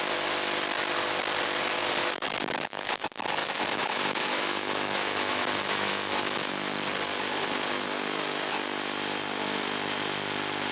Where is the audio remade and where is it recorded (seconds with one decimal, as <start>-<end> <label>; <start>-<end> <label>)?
0.0-2.0 recorded; 2.0-2.9 remade; 2.9-3.4 recorded; 3.4-6.5 remade; 6.5-10.7 recorded